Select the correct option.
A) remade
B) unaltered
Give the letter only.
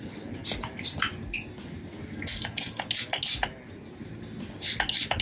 B